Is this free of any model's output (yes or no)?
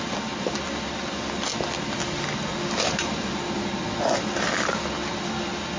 yes